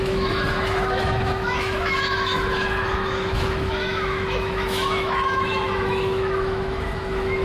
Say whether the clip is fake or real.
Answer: fake